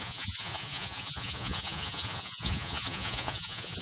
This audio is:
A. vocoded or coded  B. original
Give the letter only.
A